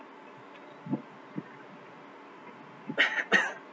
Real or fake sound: real